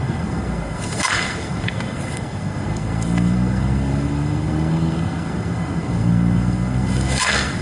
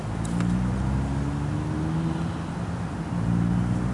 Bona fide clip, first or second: second